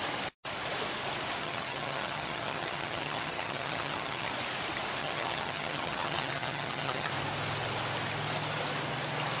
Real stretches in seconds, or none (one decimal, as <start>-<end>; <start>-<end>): 0.0-1.4; 4.3-5.0; 7.1-9.4